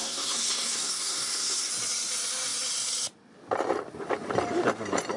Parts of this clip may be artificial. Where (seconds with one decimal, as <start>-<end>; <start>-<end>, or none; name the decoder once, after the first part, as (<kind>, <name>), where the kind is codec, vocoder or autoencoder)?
0.0-1.7 (codec, SNAC)